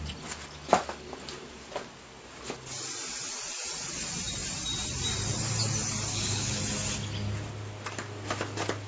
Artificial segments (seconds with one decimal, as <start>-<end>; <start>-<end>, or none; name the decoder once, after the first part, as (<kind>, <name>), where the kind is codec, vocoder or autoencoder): 6.1-6.6 (codec, DAC)